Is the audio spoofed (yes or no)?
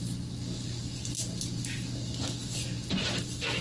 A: no